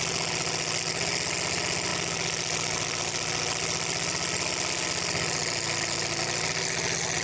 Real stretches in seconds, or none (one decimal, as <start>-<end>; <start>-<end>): 0.0-7.2